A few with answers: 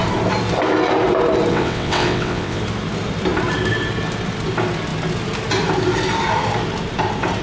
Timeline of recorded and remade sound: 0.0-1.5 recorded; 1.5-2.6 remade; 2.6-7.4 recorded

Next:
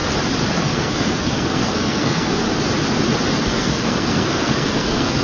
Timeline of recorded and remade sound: 0.0-0.5 recorded; 0.5-2.4 remade; 2.4-3.5 recorded; 3.5-5.2 remade

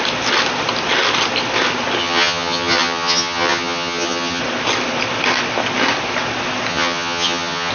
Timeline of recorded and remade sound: 0.0-2.0 recorded; 2.0-4.4 remade; 4.4-6.7 recorded; 6.7-7.7 remade

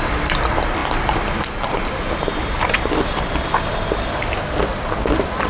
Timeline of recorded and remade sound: 0.0-5.5 remade

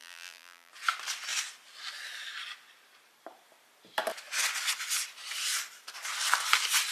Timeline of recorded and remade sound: 0.0-0.7 remade; 0.7-6.9 recorded

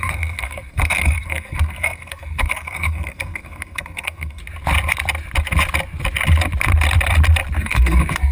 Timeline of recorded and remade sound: 0.0-4.4 remade; 4.4-7.6 recorded; 7.6-8.3 remade